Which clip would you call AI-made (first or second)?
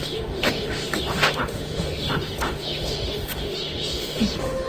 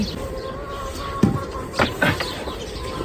first